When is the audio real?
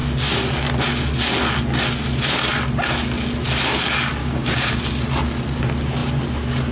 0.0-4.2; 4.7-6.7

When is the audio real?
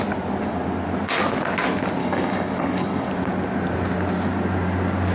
0.0-2.0; 3.1-5.1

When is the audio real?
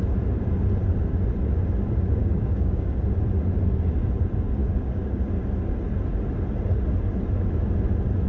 0.0-2.2; 3.0-4.6; 5.2-8.3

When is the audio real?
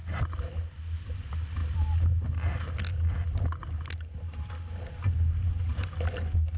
0.0-6.6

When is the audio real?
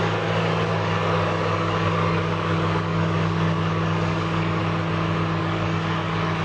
4.6-5.4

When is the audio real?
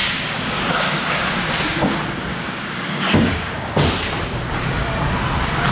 1.2-2.3; 3.8-5.7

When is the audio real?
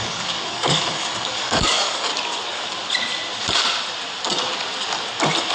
2.1-5.5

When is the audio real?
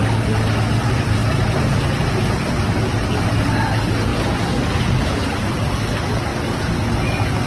0.0-7.5